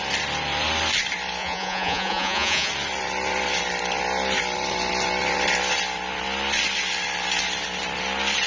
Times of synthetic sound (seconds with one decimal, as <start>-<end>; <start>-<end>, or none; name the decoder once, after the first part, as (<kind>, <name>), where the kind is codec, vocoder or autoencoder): 1.4-2.7 (vocoder, Vocos)